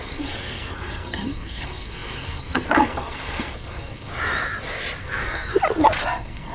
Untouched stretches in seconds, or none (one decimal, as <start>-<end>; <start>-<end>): 4.1-5.0; 5.5-6.1

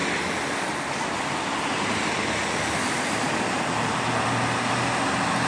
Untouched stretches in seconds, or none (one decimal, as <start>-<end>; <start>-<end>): 0.0-5.5

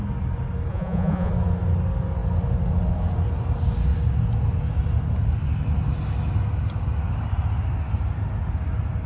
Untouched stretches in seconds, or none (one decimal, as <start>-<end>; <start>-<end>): 0.0-0.7; 1.3-9.1

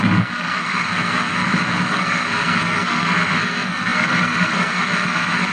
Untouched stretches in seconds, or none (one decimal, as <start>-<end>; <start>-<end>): none

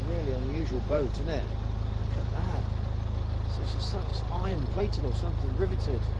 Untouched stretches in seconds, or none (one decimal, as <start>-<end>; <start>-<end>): 0.0-0.5; 1.4-2.0; 2.6-4.1; 4.8-6.2

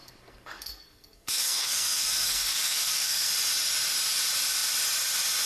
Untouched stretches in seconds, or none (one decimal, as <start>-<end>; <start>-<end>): 3.3-5.5

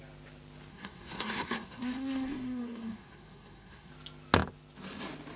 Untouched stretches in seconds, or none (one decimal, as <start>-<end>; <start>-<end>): 0.0-0.7; 3.9-5.4